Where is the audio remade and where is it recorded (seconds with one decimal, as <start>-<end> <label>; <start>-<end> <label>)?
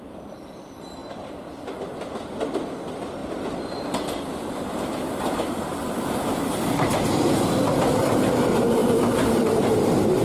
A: 0.0-1.0 remade; 1.0-2.0 recorded; 2.0-10.2 remade